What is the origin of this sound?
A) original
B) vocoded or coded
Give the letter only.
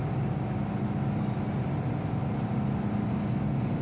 A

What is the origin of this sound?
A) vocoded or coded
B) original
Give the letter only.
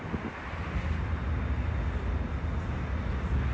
B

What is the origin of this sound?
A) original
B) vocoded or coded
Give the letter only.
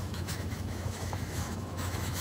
B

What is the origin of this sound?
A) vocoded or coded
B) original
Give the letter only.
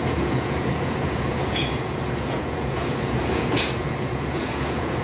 A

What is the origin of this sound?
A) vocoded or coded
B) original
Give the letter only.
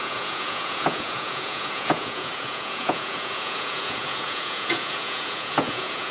A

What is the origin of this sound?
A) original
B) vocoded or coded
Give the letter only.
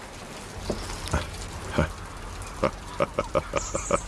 A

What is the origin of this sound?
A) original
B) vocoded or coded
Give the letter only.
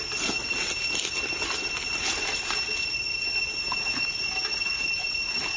A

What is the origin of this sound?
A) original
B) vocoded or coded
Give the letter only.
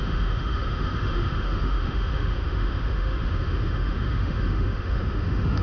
B